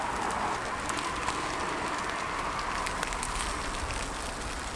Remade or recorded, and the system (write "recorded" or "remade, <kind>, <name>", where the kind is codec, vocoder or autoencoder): recorded